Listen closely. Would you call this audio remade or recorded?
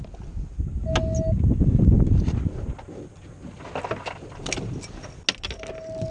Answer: recorded